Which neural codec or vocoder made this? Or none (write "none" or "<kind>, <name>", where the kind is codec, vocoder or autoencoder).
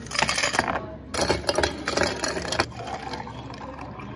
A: none